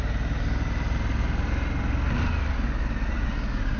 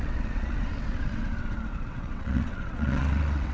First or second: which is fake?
second